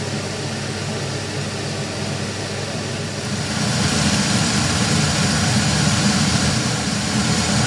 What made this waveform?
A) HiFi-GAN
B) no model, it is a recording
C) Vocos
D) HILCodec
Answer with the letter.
B